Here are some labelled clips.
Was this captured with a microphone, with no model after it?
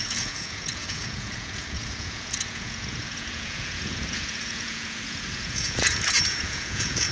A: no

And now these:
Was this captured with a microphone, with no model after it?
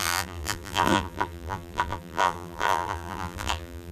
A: no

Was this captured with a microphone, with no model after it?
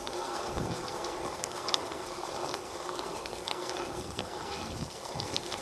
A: no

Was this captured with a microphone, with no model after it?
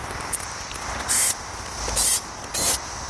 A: yes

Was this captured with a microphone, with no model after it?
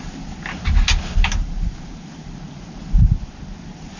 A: yes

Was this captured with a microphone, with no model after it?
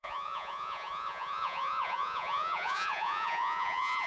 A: no